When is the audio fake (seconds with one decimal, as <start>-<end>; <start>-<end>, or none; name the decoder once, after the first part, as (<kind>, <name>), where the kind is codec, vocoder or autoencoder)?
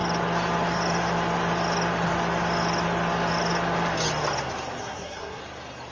4.8-5.4 (codec, SNAC)